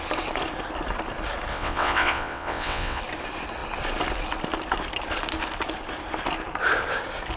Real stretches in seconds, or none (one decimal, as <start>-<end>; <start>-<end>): 0.0-1.5; 3.0-7.4